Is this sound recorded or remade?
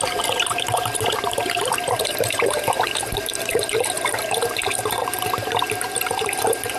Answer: remade